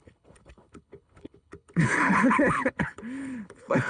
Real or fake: fake